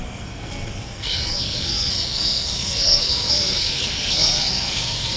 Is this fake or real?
fake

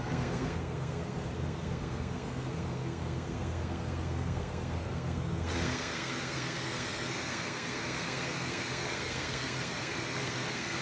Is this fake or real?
fake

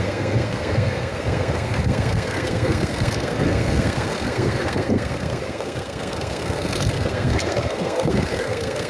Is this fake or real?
fake